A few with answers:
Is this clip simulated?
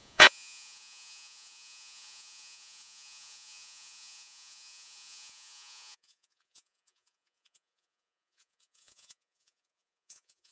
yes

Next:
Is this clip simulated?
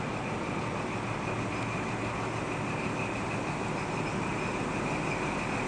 no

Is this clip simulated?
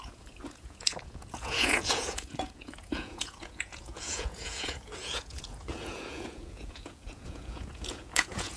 yes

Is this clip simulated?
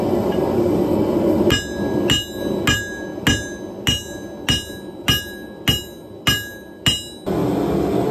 no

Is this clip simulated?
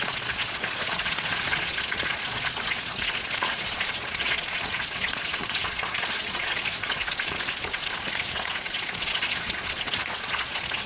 yes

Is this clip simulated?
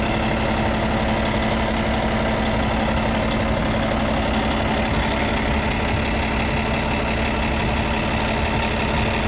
no